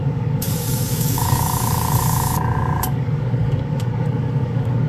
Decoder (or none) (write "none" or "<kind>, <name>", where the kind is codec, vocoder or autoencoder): codec, DAC